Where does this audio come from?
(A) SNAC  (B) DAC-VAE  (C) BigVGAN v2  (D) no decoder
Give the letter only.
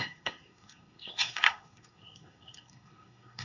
A